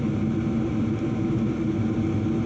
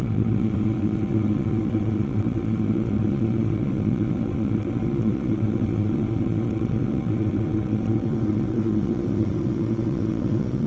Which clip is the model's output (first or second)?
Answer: second